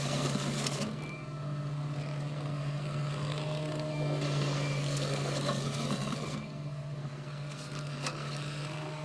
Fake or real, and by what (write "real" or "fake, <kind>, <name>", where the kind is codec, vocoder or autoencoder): fake, codec, SNAC